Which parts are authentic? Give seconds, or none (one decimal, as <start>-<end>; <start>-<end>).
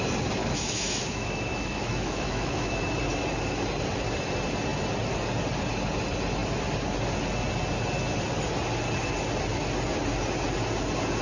0.0-0.4; 2.8-11.2